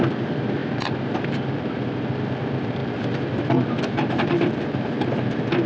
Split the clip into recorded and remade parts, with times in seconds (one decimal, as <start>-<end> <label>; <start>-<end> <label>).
0.0-0.6 remade; 0.6-1.3 recorded; 1.3-5.7 remade